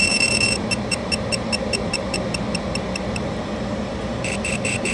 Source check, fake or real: fake